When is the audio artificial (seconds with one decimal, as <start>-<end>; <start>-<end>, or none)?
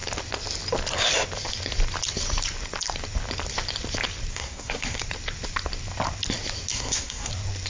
4.3-5.0; 6.7-7.3